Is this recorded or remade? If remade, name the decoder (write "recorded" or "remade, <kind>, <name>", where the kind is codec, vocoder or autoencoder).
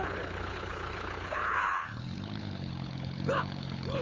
remade, codec, HILCodec